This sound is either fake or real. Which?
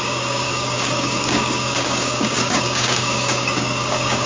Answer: fake